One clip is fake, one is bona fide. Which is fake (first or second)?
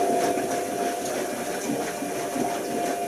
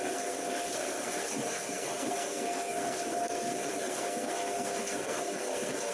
second